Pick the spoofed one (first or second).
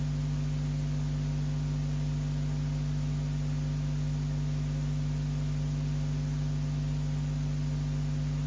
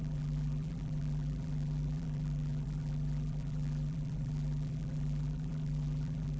second